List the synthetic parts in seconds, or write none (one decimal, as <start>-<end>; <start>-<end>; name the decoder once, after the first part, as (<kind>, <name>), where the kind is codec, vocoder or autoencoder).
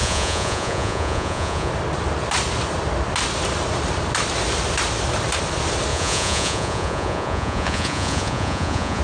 0.0-1.7 (vocoder, Vocos); 5.9-9.0